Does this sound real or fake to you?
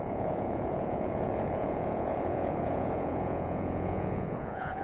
fake